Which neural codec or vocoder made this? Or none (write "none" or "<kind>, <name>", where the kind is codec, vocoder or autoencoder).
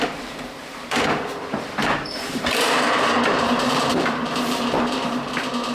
vocoder, BigVGAN v2